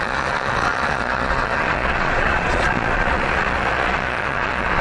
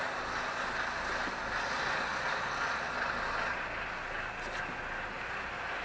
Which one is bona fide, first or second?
second